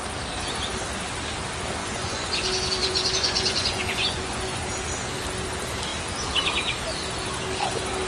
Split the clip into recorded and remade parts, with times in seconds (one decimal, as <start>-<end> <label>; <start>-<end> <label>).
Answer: 0.0-1.8 recorded; 1.8-2.3 remade; 2.3-2.8 recorded; 2.8-4.6 remade; 4.6-8.1 recorded